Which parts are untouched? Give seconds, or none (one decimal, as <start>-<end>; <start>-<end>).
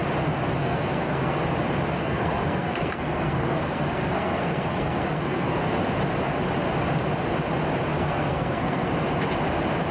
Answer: 0.0-0.6; 1.4-2.0; 5.7-7.9; 8.9-9.9